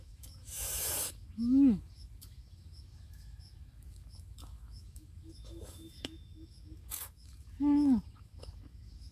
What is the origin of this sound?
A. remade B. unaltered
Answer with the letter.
A